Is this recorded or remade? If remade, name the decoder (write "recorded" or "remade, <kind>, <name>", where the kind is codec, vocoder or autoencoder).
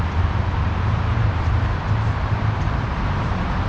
remade, vocoder, BigVGAN v2